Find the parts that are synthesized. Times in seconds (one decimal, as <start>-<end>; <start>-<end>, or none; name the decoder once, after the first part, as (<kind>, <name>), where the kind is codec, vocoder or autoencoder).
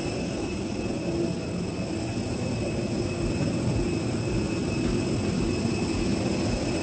none